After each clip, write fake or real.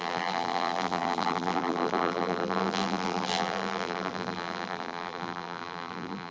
fake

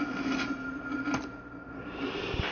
real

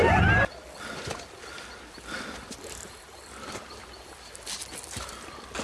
real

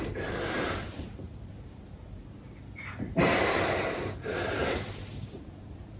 fake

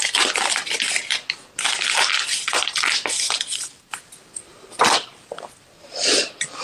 real